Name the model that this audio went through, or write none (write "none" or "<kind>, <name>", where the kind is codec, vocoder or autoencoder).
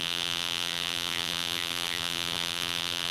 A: vocoder, BigVGAN v2